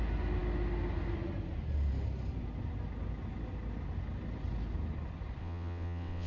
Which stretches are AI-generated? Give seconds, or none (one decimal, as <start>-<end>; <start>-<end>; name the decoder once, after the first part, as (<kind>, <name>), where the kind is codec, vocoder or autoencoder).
5.4-6.3 (vocoder, WaveNeXt)